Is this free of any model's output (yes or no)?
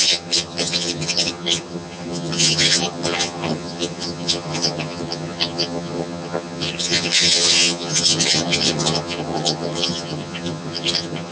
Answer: no